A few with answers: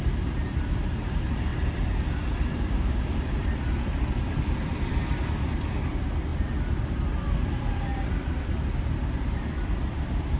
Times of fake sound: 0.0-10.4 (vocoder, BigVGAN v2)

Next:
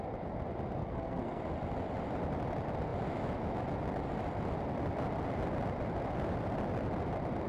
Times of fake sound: 0.8-1.4 (codec, SNAC)

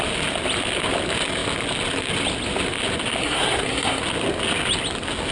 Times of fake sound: 3.2-4.0 (codec, SNAC)